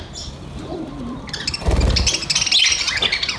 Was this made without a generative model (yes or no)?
yes